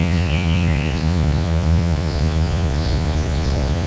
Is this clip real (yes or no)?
no